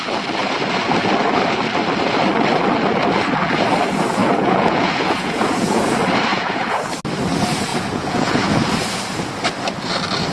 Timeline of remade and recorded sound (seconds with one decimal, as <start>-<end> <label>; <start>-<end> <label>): 0.0-4.2 recorded; 4.2-5.8 remade; 5.8-6.3 recorded; 6.3-6.9 remade; 6.9-7.7 recorded; 7.7-8.6 remade; 8.6-10.3 recorded